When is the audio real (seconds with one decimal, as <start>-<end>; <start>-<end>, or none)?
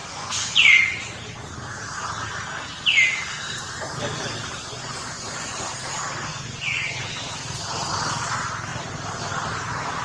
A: 0.8-4.6; 5.7-6.3; 7.1-10.0